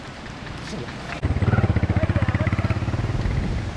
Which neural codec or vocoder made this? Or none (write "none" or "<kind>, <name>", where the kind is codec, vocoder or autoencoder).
none